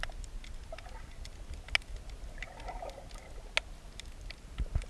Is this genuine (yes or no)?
yes